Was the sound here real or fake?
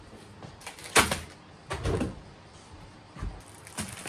real